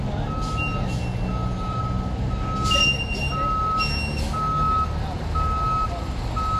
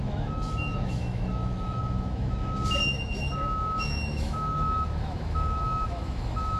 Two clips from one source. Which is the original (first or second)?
first